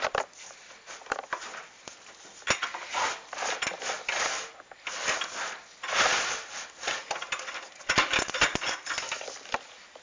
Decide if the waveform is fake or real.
real